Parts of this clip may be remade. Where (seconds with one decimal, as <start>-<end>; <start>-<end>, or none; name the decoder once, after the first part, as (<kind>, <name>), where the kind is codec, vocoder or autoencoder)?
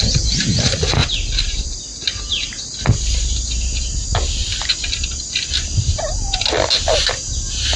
1.0-2.2 (vocoder, BigVGAN v2); 4.4-6.4